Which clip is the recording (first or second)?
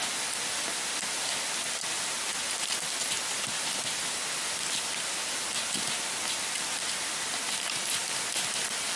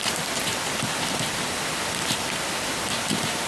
first